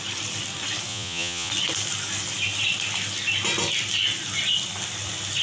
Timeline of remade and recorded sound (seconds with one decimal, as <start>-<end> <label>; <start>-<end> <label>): 0.0-0.9 recorded; 0.9-1.5 remade; 1.5-5.4 recorded